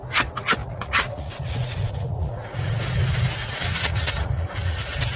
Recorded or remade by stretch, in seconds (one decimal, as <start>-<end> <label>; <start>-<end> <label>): 0.0-0.6 recorded; 0.6-2.8 remade; 2.8-3.4 recorded; 3.4-5.2 remade